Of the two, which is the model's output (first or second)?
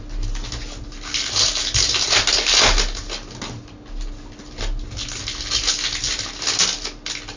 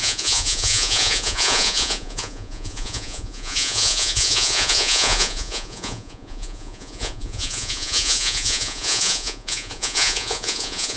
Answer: second